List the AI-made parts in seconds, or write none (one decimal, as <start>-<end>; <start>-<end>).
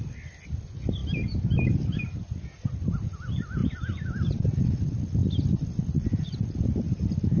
none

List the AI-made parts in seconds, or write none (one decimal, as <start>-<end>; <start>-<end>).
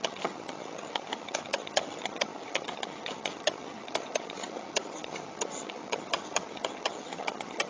0.0-7.7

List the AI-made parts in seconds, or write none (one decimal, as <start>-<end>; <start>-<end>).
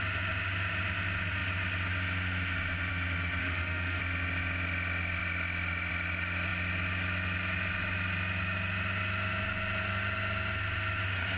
3.4-4.0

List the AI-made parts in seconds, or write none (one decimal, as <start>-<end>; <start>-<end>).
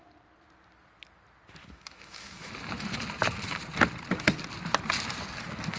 1.6-2.5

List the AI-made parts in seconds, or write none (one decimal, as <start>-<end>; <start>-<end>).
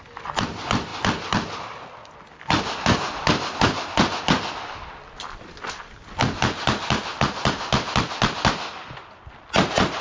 none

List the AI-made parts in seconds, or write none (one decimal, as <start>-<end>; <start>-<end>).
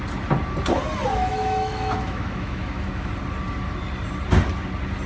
1.1-3.1